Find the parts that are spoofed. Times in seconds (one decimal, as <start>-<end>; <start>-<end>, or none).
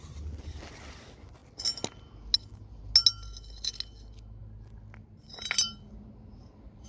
none